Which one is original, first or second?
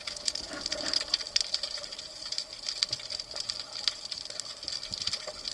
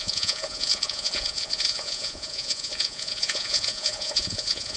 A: first